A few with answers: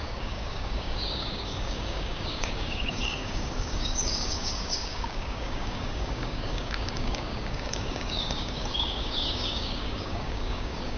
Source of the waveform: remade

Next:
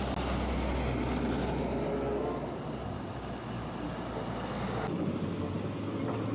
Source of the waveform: recorded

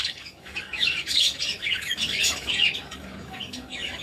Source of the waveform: remade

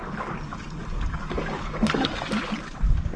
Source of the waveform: remade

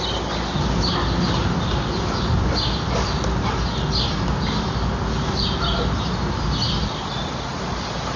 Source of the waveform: recorded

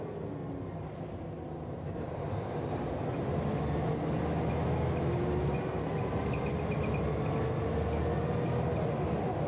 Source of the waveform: recorded